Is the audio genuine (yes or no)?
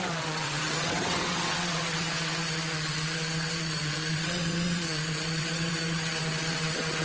no